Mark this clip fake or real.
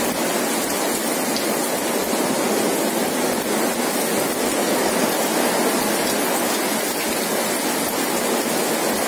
real